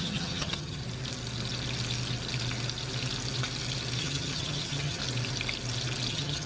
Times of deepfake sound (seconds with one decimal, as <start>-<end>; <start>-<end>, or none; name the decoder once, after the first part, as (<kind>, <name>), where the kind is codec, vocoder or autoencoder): 0.0-0.8 (vocoder, HiFi-GAN); 4.0-5.0; 6.1-6.5